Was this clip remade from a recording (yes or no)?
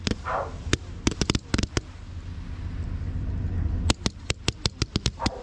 yes